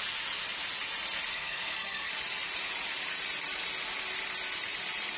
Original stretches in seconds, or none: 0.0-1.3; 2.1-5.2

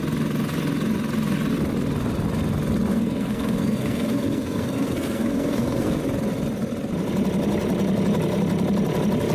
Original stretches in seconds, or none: 0.0-2.9; 6.0-9.3

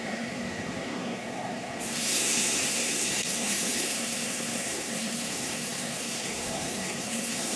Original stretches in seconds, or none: none

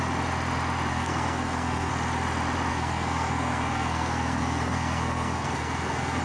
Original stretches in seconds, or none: 0.0-0.9; 1.9-2.7

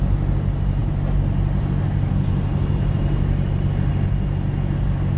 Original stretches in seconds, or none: 0.0-5.2